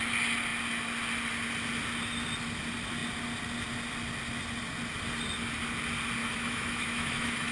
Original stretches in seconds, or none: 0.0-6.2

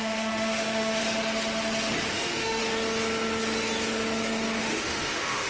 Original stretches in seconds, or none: 1.0-2.1; 2.6-4.6

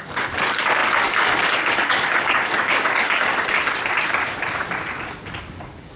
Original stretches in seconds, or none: 3.3-5.4

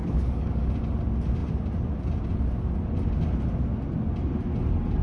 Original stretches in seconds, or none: 0.7-5.0

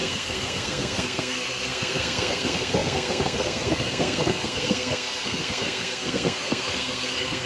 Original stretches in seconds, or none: none

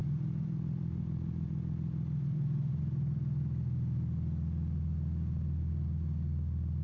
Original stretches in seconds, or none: 2.8-6.8

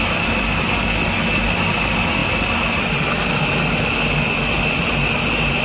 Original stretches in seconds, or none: 0.0-5.6